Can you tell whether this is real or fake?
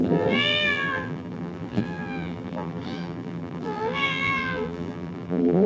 fake